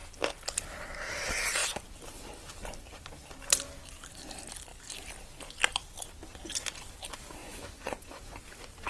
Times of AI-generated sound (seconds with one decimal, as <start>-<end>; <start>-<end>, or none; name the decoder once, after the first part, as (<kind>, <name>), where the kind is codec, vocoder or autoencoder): 7.4-8.4 (vocoder, Vocos)